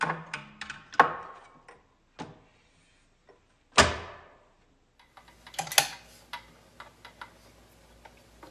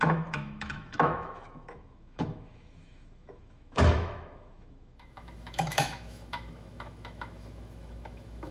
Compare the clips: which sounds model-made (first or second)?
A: second